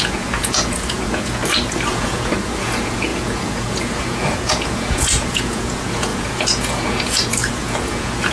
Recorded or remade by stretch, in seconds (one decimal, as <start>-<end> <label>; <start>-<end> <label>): 0.0-1.4 remade; 1.4-1.9 recorded; 1.9-8.3 remade